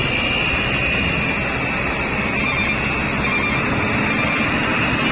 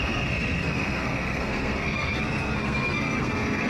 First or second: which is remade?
second